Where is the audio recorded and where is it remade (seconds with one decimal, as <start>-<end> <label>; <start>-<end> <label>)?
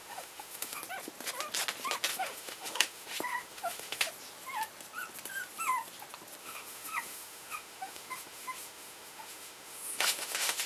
0.0-0.8 remade; 0.8-2.1 recorded; 2.1-4.1 remade; 4.1-6.4 recorded; 6.4-10.7 remade